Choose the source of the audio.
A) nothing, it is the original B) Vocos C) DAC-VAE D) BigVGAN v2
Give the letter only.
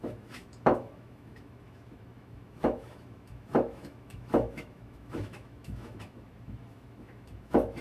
C